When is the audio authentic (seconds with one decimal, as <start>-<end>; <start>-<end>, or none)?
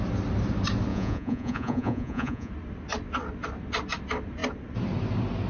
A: 0.0-0.9; 2.5-5.5